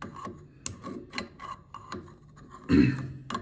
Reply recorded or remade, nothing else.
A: recorded